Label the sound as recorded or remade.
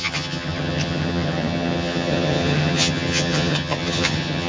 remade